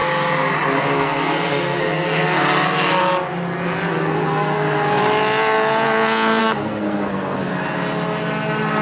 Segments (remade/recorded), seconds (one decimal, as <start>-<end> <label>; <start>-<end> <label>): 0.0-0.8 recorded; 0.8-3.0 remade; 3.0-3.9 recorded; 3.9-5.0 remade; 5.0-6.4 recorded; 6.4-7.5 remade; 7.5-8.8 recorded